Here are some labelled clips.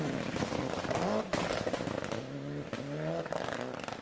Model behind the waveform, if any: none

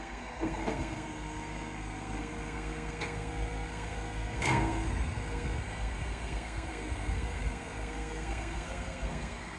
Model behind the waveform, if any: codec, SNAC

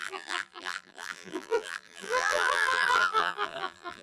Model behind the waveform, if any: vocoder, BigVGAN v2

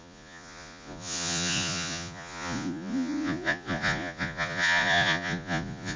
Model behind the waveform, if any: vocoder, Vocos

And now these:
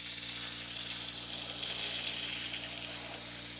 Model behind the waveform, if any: none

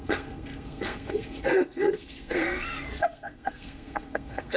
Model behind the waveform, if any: codec, SNAC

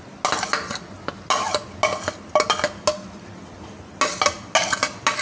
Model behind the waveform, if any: none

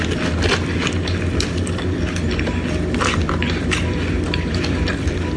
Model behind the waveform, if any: vocoder, BigVGAN v2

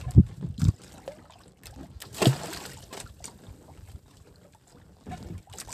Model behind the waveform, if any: none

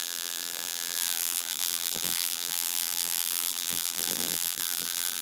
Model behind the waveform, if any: vocoder, BigVGAN v2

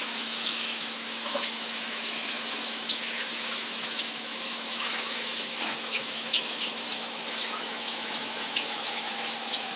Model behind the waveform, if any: autoencoder, DAC-VAE